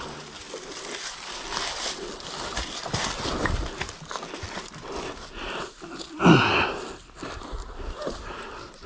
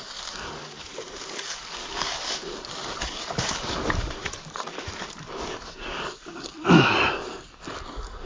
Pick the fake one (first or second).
second